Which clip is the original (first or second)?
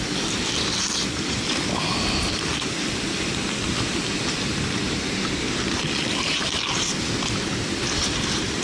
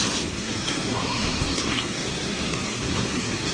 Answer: first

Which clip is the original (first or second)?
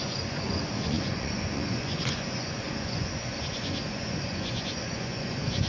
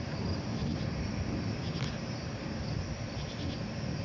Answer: second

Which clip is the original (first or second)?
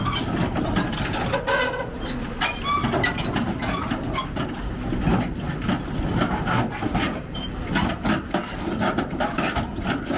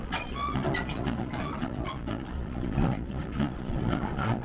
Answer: first